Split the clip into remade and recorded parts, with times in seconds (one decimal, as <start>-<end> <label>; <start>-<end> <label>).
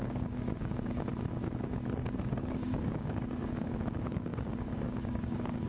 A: 0.0-1.1 remade; 1.1-2.3 recorded; 2.3-5.7 remade